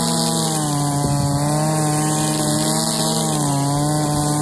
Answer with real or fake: real